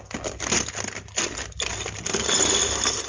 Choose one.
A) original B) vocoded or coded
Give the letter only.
A